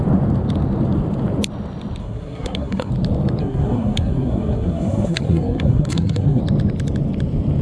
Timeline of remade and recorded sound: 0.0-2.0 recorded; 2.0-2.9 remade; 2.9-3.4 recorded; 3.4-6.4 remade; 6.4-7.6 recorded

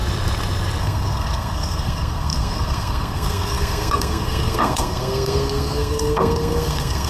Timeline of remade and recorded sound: 0.0-0.8 recorded; 0.8-7.1 remade

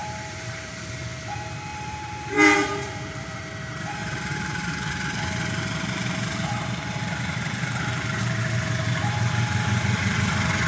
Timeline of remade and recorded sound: 0.0-0.9 remade; 0.9-1.7 recorded; 1.7-3.4 remade; 3.4-4.0 recorded; 4.0-8.4 remade; 8.4-10.7 recorded

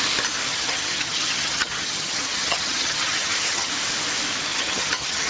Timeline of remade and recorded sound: 0.0-0.5 recorded; 0.5-3.7 remade; 3.7-4.5 recorded; 4.5-5.3 remade

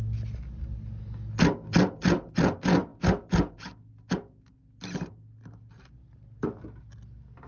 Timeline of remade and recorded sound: 0.0-7.5 recorded

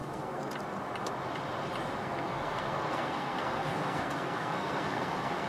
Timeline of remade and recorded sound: 0.0-0.5 remade; 0.5-2.0 recorded; 2.0-5.5 remade